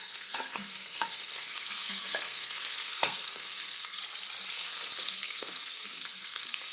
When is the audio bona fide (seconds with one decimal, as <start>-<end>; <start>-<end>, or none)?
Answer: 4.0-4.5